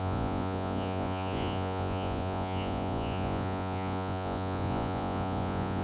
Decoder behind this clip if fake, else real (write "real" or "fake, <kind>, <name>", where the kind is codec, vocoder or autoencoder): fake, vocoder, Vocos